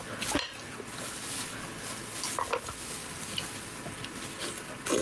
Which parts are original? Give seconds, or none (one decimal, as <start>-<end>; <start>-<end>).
0.0-5.0